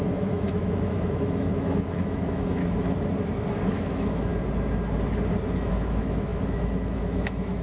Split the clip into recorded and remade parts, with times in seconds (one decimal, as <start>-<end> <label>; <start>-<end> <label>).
0.0-2.6 remade; 2.6-3.7 recorded; 3.7-4.3 remade; 4.3-5.7 recorded; 5.7-7.6 remade